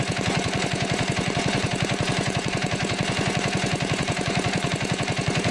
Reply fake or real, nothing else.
fake